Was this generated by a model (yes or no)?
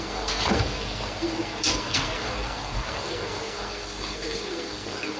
yes